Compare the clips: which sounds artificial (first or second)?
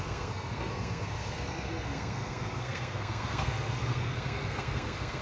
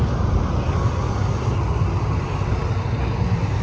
first